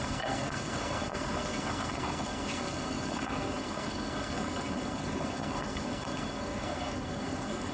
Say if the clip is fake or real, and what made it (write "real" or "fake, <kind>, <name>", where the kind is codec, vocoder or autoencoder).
fake, codec, SNAC